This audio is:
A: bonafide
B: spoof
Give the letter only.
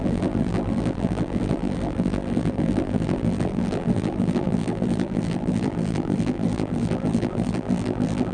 B